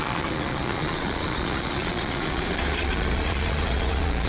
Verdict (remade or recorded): remade